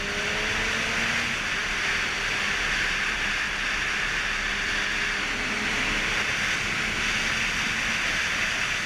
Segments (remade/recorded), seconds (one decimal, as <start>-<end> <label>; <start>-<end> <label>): 0.0-8.9 recorded